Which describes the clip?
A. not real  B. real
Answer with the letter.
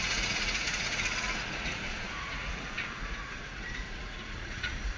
A